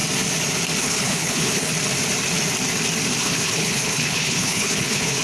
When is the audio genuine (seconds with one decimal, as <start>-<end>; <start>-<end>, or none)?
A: 0.0-0.8; 1.7-3.2